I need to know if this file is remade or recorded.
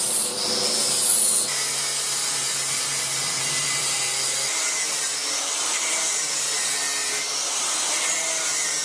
recorded